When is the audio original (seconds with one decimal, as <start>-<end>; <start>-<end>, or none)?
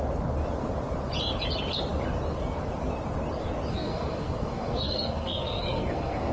0.0-3.7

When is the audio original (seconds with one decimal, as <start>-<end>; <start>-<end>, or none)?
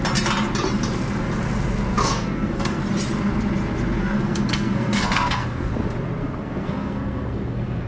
0.0-1.9; 2.8-4.0; 5.7-6.2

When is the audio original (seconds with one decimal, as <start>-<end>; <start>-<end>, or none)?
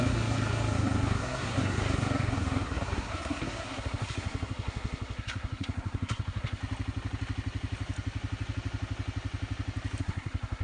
6.6-10.0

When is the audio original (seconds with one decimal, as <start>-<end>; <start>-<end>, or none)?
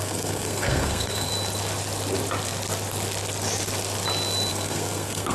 1.3-4.5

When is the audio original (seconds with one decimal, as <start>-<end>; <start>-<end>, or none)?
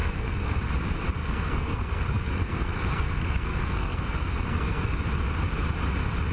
0.7-1.2; 5.0-6.3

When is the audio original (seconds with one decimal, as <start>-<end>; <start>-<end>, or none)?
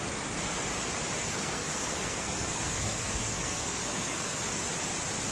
0.0-1.2; 4.4-5.3